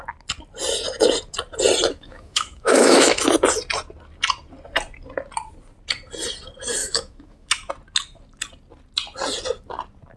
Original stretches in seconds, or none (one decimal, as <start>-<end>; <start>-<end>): 0.0-1.9; 3.3-6.8; 7.7-10.2